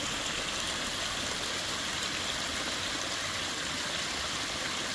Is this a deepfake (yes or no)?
no